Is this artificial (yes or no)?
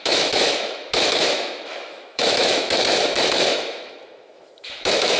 yes